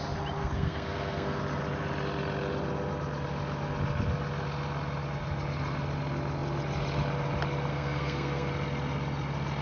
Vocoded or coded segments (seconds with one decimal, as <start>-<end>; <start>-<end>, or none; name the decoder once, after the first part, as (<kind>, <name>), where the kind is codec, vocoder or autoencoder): 0.4-1.4 (codec, SNAC); 7.7-8.5